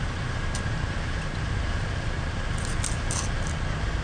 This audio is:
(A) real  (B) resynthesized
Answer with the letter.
A